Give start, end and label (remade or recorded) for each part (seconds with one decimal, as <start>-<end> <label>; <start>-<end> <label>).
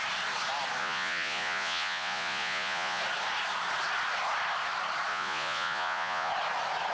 0.0-0.8 recorded; 0.8-3.0 remade; 3.0-5.1 recorded; 5.1-6.3 remade; 6.3-6.9 recorded